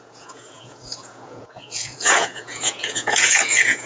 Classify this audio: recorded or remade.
remade